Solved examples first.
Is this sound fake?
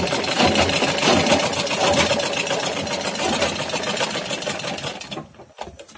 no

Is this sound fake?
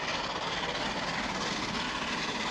no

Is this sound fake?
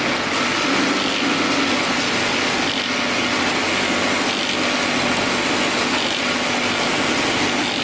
no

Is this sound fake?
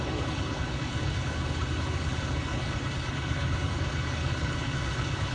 yes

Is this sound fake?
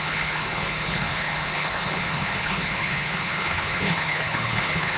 yes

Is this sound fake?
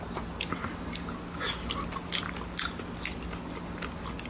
no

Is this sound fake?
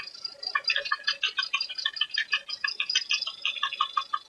no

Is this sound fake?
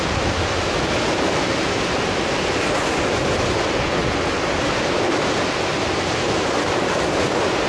no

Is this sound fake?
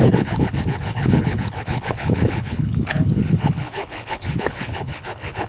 yes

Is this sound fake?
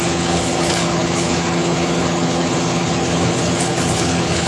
yes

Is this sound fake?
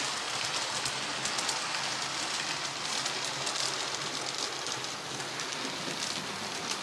no